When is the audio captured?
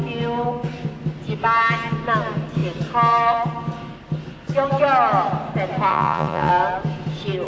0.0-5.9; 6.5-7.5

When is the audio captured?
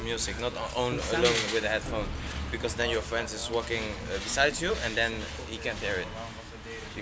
0.0-7.0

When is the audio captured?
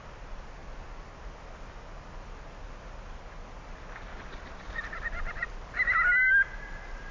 0.0-4.1; 4.7-7.1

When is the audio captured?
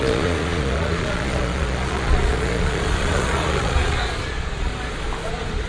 4.7-5.3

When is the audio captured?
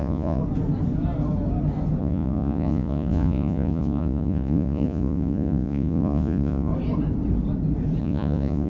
0.4-2.0; 6.7-8.0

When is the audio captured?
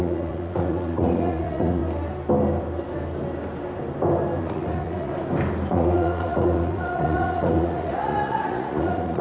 1.8-4.4; 5.1-5.7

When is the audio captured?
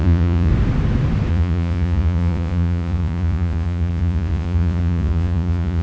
0.5-1.3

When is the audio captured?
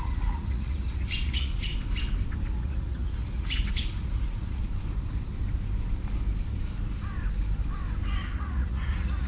1.7-2.5; 4.6-8.4